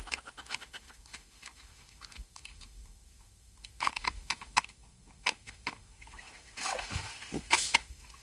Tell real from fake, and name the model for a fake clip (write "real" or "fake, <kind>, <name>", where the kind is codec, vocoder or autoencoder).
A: fake, autoencoder, DAC-VAE